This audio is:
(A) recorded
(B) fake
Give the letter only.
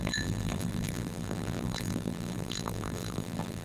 B